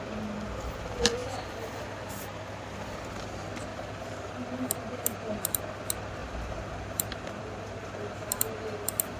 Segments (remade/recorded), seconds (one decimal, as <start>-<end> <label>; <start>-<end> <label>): 0.0-1.2 recorded; 1.2-2.1 remade; 2.1-3.7 recorded; 3.7-5.6 remade; 5.6-6.2 recorded; 6.2-9.2 remade